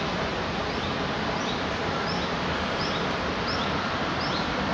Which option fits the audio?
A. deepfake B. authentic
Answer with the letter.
B